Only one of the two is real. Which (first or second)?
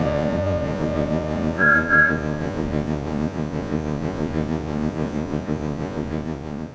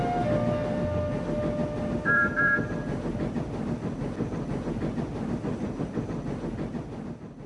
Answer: second